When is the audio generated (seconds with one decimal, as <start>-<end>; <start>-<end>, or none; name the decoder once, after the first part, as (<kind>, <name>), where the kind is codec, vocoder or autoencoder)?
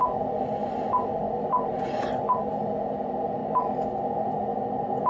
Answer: none